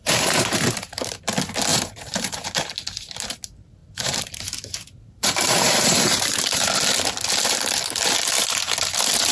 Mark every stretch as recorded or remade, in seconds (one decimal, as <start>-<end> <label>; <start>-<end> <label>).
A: 0.0-1.2 remade; 1.2-1.7 recorded; 1.7-2.7 remade; 2.7-3.8 recorded; 3.8-6.7 remade; 6.7-9.3 recorded